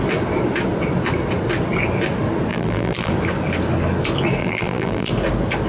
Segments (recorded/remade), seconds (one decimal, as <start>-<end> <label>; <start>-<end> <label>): 0.0-2.5 recorded; 2.5-3.1 remade; 3.1-4.4 recorded; 4.4-5.1 remade; 5.1-5.7 recorded